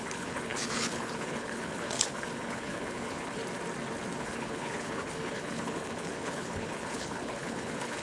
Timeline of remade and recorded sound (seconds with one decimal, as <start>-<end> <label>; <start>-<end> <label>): 0.0-3.4 remade; 3.4-4.2 recorded; 4.2-8.0 remade